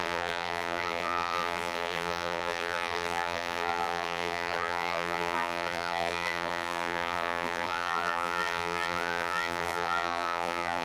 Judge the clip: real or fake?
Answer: fake